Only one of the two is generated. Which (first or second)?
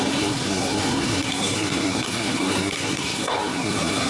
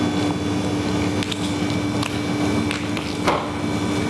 first